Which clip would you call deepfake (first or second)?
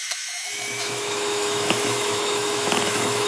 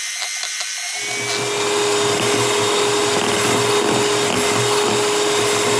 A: first